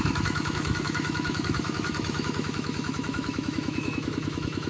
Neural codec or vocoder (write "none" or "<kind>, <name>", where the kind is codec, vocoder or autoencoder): autoencoder, DAC-VAE